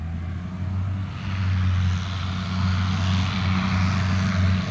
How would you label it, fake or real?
real